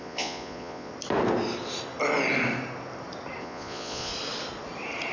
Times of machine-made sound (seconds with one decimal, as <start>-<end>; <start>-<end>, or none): 0.0-0.9; 3.4-4.1